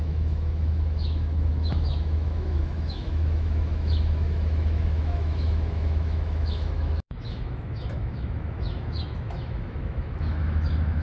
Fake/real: fake